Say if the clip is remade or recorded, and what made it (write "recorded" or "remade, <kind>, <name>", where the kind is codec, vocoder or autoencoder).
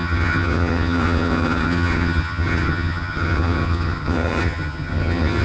remade, vocoder, HiFi-GAN